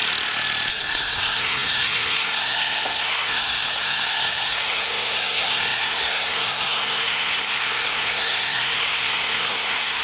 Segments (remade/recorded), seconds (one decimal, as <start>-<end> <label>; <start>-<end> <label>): 0.0-0.7 recorded; 0.7-10.0 remade